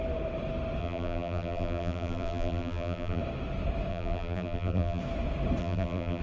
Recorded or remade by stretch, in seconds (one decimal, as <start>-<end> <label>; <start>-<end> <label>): 0.0-0.8 recorded; 0.8-3.2 remade; 3.2-3.9 recorded; 3.9-5.0 remade; 5.0-5.6 recorded; 5.6-6.2 remade